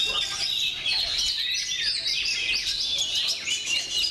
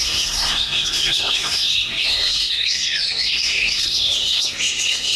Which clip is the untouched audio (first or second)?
first